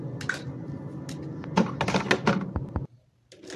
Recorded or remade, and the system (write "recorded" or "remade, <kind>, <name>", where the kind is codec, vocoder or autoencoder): recorded